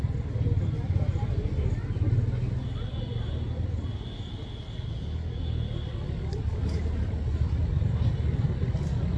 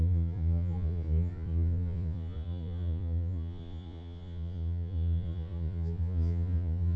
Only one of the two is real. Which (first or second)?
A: first